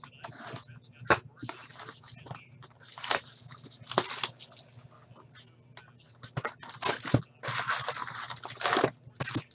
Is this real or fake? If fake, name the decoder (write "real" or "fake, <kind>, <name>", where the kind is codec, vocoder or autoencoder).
real